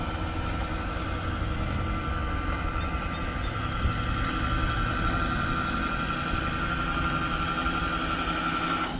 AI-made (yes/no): no